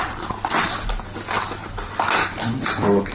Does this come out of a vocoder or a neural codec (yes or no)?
no